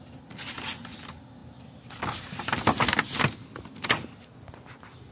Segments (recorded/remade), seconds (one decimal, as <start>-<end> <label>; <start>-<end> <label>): 0.0-5.1 recorded